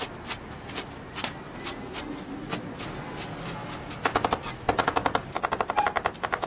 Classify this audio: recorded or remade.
recorded